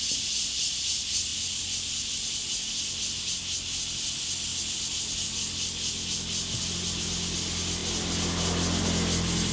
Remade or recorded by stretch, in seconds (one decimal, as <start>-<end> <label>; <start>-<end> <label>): 0.0-9.5 recorded